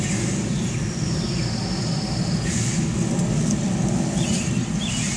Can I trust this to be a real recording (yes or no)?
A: yes